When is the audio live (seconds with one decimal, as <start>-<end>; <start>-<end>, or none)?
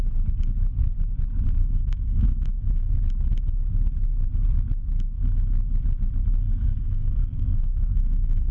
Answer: 0.0-1.6; 2.9-6.4